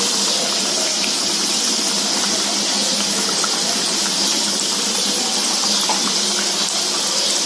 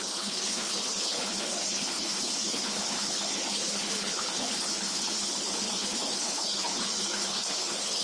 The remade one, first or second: second